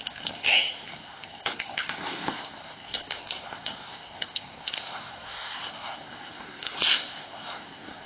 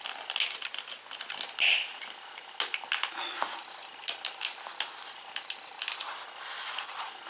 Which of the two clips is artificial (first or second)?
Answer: first